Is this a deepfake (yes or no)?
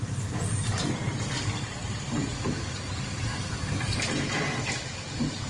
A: yes